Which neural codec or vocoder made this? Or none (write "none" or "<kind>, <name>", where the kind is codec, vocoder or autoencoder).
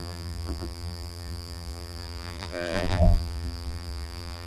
vocoder, BigVGAN v2